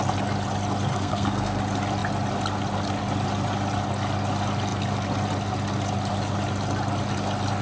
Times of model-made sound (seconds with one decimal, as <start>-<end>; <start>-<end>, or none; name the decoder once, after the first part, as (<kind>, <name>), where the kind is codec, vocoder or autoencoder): 0.9-1.6 (codec, SNAC)